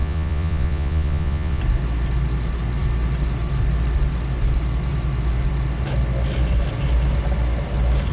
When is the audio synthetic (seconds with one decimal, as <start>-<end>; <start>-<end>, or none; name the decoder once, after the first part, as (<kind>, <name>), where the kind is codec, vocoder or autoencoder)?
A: 0.0-1.6 (vocoder, Vocos)